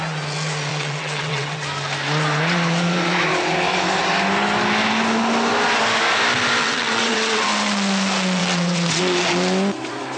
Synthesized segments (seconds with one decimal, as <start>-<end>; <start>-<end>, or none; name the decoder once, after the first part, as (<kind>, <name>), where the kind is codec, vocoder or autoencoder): 0.7-1.6 (vocoder, WaveNeXt); 6.6-7.5; 8.4-9.0